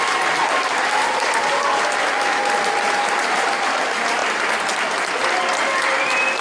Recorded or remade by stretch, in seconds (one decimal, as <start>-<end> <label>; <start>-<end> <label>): 0.0-6.4 recorded